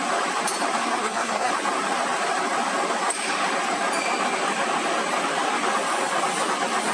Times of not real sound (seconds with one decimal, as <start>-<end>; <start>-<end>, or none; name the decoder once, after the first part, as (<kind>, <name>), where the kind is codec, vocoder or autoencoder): 0.8-1.5 (codec, SNAC)